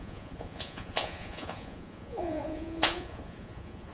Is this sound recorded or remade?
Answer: remade